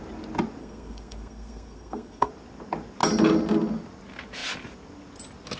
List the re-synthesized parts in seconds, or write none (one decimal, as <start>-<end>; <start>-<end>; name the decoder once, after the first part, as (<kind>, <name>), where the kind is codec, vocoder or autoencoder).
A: 0.6-2.3 (codec, SNAC)